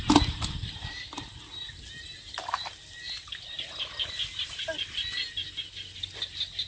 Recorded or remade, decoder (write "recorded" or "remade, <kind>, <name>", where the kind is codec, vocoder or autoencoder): recorded